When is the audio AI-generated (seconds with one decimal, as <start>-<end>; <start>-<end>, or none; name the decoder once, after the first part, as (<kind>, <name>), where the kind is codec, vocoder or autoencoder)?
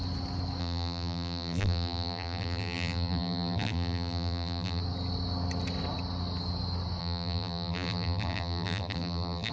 0.6-4.8 (vocoder, BigVGAN v2); 7.0-9.5